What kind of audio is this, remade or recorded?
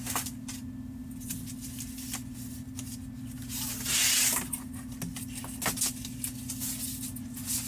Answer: recorded